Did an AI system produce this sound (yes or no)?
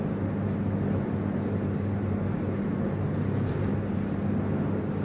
no